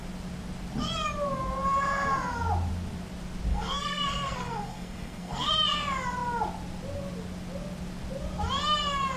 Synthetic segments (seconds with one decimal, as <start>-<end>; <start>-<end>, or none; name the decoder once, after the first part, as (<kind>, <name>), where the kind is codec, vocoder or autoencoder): 3.5-5.5 (codec, SNAC)